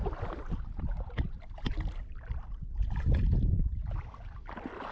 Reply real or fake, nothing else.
real